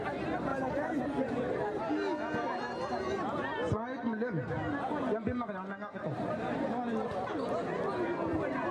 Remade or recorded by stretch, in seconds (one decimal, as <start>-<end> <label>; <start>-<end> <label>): 0.0-0.5 recorded; 0.5-1.0 remade; 1.0-8.7 recorded